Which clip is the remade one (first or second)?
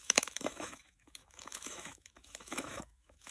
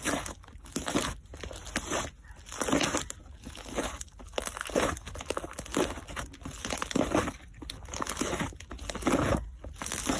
first